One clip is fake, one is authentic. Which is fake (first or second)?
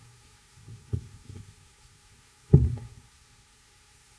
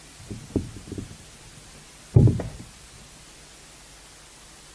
first